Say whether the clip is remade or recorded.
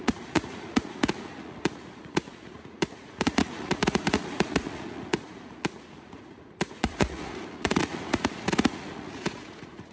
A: remade